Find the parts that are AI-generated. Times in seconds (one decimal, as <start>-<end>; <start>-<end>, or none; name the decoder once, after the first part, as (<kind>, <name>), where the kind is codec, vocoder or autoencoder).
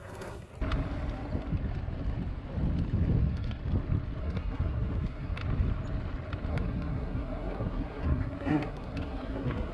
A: 0.0-0.5 (codec, SNAC); 3.2-3.6; 4.2-5.4; 6.5-9.7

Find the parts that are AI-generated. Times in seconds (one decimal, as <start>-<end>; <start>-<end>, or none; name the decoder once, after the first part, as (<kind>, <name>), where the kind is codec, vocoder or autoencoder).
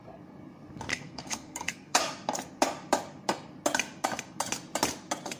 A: 0.9-2.0 (codec, SNAC)